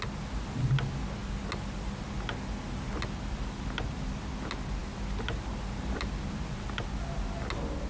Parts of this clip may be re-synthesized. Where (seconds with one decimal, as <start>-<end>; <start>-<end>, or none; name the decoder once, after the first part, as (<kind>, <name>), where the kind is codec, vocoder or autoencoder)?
none